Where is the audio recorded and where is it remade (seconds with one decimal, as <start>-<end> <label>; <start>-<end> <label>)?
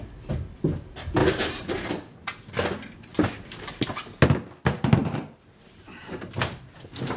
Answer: 0.0-1.2 recorded; 1.2-1.9 remade; 1.9-3.1 recorded; 3.1-3.7 remade; 3.7-5.0 recorded; 5.0-6.2 remade; 6.2-7.2 recorded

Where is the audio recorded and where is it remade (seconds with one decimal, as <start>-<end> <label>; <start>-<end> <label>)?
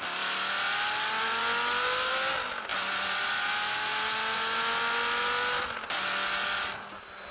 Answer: 0.0-7.3 recorded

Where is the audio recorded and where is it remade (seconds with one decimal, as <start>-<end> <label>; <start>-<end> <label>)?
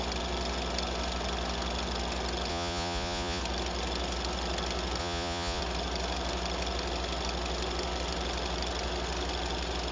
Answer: 0.0-2.5 recorded; 2.5-3.4 remade; 3.4-5.0 recorded; 5.0-5.6 remade; 5.6-9.9 recorded